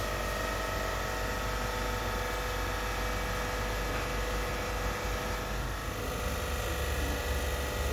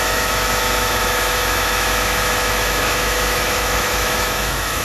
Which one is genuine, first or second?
first